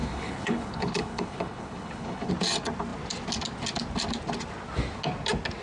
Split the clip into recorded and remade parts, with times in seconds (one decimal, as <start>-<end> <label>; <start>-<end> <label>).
0.0-2.3 remade; 2.3-5.6 recorded